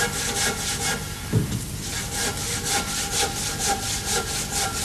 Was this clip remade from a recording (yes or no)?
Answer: no